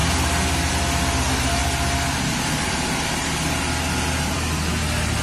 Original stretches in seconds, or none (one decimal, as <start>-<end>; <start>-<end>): 0.0-1.6; 4.7-5.2